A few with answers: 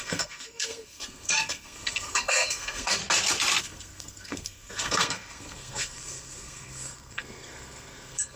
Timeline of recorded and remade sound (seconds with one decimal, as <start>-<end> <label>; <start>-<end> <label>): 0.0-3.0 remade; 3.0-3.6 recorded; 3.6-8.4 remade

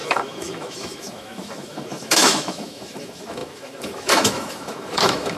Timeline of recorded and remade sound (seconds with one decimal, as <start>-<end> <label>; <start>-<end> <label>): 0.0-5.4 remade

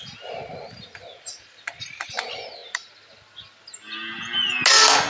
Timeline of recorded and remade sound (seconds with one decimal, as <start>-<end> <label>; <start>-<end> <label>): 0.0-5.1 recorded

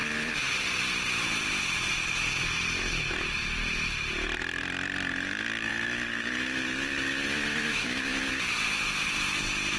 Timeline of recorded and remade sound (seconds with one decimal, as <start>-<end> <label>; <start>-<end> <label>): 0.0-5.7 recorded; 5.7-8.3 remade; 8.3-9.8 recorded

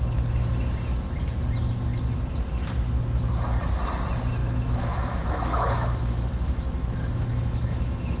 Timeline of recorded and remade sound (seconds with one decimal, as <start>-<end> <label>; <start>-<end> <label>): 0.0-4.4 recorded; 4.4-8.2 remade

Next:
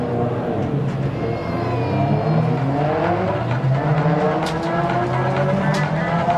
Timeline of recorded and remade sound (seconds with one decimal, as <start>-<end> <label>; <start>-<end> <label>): 0.0-6.4 recorded